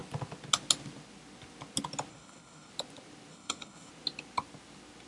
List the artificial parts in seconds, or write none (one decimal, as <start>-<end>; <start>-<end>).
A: 2.1-2.7; 3.3-3.9